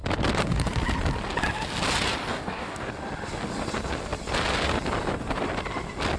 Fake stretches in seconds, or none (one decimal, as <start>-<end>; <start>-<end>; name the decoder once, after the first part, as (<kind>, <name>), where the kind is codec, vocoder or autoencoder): 2.3-2.9 (codec, DAC)